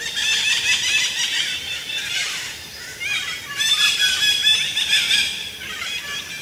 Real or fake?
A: fake